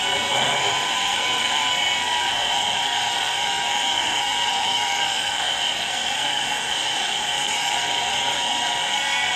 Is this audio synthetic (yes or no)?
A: yes